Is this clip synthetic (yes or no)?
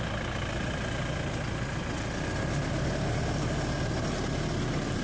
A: no